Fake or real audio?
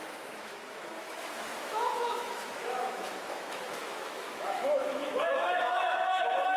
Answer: fake